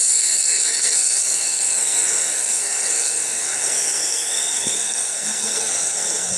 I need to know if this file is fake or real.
fake